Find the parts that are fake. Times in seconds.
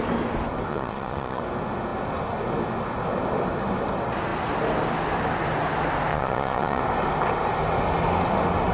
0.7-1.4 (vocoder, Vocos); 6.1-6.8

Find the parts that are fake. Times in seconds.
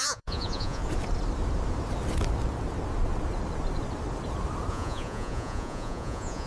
0.0-0.8 (vocoder, Vocos); 4.7-6.5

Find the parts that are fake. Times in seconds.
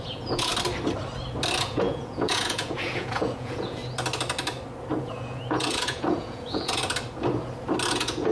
0.0-0.5 (vocoder, Vocos); 1.6-3.8; 5.0-6.8; 7.9-8.3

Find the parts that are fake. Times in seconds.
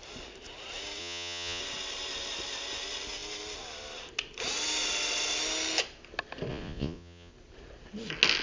1.0-1.6 (vocoder, Vocos); 6.5-7.3